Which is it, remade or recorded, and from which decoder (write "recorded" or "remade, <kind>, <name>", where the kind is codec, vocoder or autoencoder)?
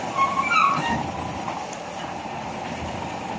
recorded